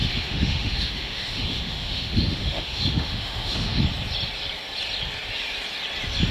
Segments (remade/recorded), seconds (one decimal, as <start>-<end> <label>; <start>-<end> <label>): 0.0-3.8 remade; 3.8-6.3 recorded